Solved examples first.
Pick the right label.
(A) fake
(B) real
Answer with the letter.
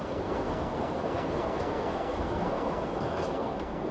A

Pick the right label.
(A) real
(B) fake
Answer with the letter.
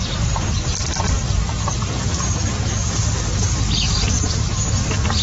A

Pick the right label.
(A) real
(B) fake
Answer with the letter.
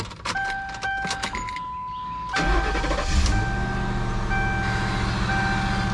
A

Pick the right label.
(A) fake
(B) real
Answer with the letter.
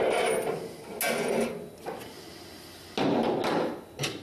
B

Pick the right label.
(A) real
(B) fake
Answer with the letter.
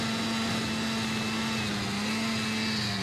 A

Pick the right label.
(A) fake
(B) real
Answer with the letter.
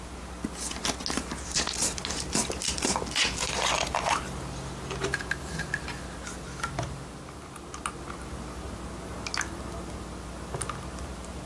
B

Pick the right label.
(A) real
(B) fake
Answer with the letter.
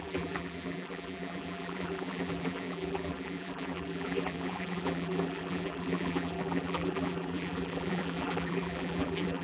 B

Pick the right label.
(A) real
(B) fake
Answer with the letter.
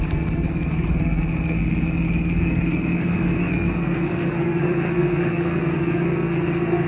B